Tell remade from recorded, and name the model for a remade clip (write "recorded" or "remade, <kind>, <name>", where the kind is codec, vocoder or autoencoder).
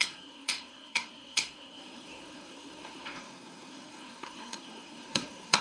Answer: remade, codec, SNAC